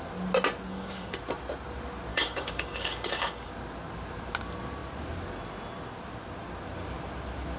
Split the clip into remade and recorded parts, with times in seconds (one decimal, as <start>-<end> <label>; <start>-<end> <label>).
0.0-0.7 recorded; 0.7-1.2 remade; 1.2-2.1 recorded; 2.1-3.5 remade; 3.5-7.6 recorded